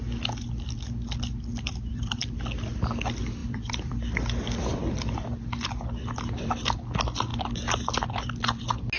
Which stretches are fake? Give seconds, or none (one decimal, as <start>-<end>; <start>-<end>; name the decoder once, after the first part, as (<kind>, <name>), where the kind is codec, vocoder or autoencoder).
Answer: 1.5-2.3 (vocoder, BigVGAN v2); 3.4-4.1